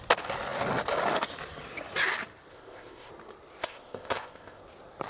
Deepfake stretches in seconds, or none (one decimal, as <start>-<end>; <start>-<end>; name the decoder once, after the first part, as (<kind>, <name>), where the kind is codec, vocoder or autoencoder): 2.5-3.1 (codec, ZipCodec); 3.6-4.6